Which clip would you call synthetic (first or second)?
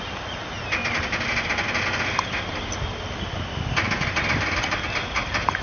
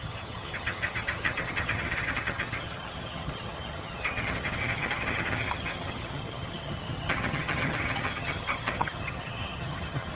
second